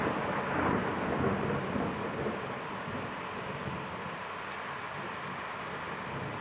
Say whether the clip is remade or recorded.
recorded